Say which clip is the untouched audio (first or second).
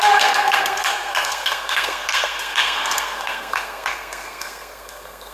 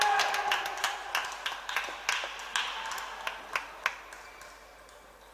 second